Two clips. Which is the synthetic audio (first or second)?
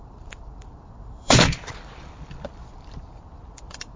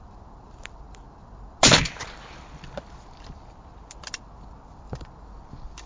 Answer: first